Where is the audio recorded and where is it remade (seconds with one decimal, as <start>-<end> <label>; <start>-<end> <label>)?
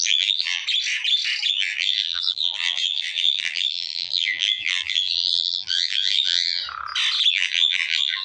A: 0.0-0.6 remade; 0.6-1.5 recorded; 1.5-6.6 remade; 6.6-7.3 recorded; 7.3-8.2 remade